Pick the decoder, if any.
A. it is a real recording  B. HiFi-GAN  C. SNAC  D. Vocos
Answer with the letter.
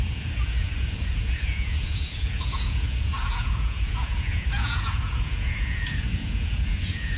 D